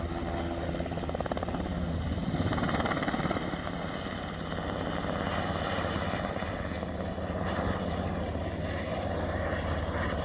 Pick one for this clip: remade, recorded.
recorded